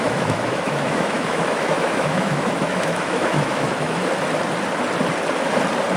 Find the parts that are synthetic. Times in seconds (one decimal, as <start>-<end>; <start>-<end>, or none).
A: 0.0-4.0